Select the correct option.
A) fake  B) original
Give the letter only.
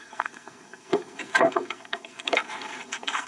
A